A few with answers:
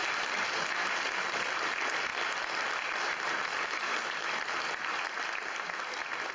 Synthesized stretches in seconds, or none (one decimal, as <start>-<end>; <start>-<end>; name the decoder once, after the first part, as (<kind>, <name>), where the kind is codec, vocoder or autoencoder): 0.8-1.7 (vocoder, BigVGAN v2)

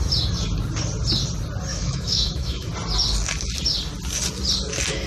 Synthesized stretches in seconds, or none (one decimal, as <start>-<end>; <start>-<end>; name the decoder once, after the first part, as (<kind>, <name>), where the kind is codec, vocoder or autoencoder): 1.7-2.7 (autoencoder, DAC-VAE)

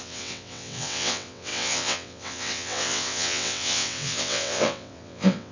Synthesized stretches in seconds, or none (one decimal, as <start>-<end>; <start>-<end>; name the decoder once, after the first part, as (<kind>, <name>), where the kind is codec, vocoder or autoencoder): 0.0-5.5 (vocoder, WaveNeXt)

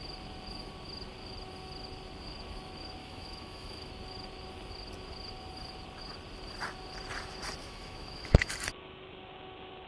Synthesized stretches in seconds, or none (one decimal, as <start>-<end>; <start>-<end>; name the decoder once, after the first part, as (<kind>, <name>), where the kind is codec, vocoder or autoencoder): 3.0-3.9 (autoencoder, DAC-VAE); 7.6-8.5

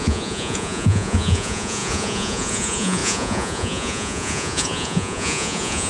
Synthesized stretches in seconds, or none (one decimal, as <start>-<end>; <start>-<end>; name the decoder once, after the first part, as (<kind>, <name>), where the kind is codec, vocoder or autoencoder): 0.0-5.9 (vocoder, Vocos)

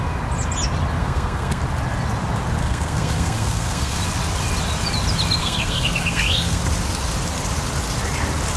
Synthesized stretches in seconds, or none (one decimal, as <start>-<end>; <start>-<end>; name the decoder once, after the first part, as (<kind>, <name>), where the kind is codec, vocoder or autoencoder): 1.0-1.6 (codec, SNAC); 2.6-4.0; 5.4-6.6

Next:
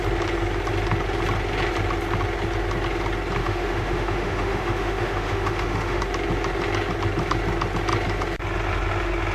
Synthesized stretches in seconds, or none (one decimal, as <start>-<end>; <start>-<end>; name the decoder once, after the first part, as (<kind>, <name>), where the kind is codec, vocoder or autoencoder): 3.4-6.0 (autoencoder, DAC-VAE)

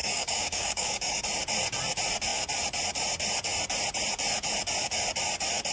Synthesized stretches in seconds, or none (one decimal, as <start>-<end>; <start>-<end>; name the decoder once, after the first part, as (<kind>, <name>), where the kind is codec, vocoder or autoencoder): 0.0-1.2 (codec, DAC)